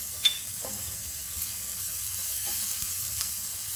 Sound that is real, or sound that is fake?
fake